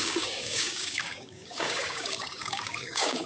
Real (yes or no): no